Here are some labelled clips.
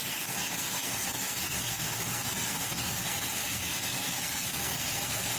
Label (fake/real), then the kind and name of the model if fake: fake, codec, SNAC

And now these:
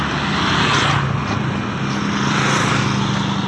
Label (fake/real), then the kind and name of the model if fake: real